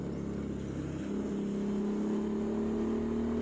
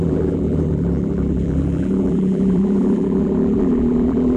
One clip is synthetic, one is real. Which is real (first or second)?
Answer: first